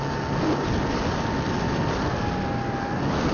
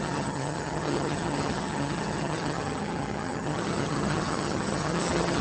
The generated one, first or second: second